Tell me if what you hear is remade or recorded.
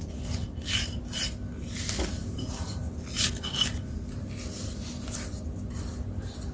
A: recorded